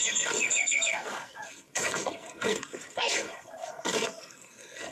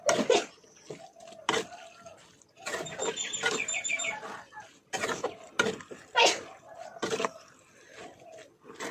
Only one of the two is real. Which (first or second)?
second